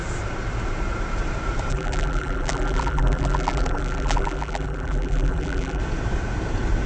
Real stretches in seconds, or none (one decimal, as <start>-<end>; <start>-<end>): 0.0-1.7; 5.8-6.9